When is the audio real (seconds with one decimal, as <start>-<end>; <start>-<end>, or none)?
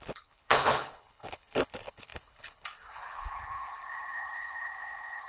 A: none